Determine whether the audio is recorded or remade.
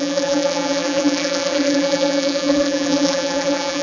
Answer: remade